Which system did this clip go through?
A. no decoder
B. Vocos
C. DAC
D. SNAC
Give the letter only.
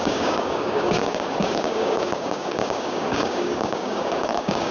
C